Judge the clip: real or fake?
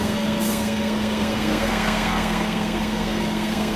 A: fake